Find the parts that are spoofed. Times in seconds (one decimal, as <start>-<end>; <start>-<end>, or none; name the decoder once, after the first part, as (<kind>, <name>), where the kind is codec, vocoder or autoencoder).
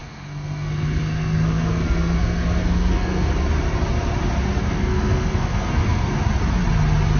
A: 0.0-3.3 (codec, SNAC); 4.6-6.1